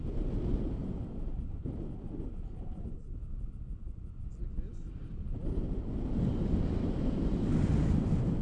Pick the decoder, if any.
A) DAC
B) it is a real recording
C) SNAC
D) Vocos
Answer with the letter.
B